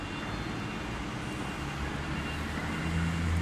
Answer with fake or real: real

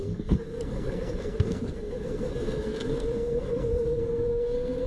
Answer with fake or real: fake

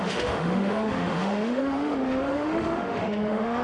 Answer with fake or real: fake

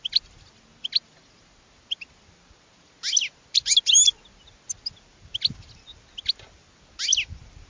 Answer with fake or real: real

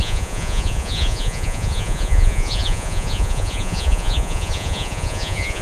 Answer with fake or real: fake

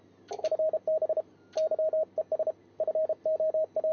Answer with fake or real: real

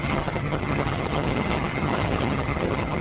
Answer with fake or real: fake